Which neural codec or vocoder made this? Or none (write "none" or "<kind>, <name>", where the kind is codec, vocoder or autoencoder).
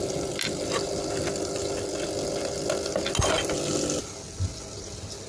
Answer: none